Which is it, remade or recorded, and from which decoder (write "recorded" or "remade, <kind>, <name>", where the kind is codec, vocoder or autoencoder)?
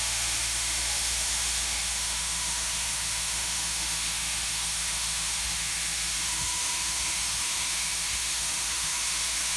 remade, autoencoder, DAC-VAE